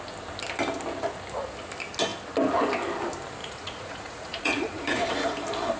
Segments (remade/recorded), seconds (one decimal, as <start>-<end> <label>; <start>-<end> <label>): 0.0-3.4 recorded; 3.4-5.1 remade; 5.1-5.8 recorded